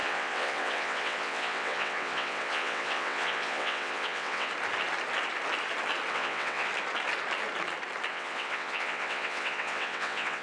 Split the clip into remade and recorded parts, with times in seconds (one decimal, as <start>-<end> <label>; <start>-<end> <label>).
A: 0.0-4.5 remade; 4.5-6.1 recorded; 6.1-6.7 remade; 6.7-8.1 recorded; 8.1-10.4 remade